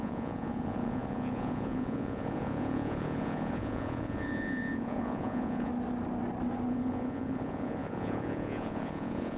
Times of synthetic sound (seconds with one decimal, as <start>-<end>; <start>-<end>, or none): 0.0-5.7; 6.7-9.4